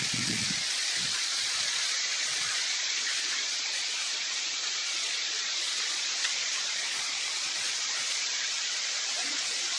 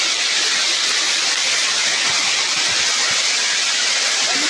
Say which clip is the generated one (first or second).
first